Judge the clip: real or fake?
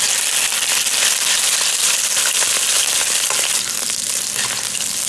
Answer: real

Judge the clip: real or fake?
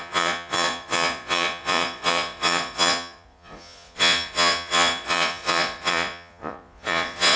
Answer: fake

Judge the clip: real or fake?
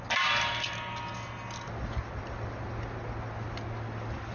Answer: real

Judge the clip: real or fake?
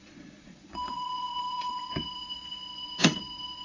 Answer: fake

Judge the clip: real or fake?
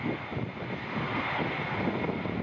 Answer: real